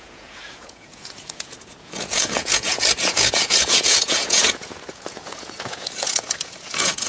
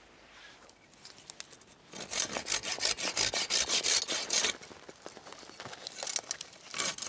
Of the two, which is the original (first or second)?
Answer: second